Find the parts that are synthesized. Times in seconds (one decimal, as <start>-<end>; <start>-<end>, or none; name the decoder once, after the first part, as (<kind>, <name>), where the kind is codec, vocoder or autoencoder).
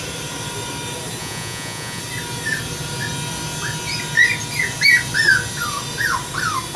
1.2-2.0 (vocoder, Vocos)